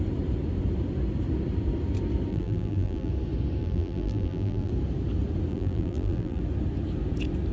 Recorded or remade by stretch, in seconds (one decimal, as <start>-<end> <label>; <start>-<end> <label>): 0.0-2.3 recorded; 2.3-3.1 remade; 3.1-3.6 recorded; 3.6-4.7 remade; 4.7-5.5 recorded; 5.5-6.4 remade; 6.4-7.5 recorded